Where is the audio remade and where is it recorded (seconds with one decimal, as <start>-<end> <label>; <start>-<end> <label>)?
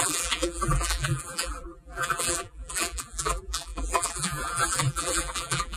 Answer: 0.0-5.8 remade